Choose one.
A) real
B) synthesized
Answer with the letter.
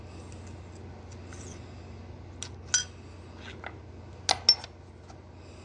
A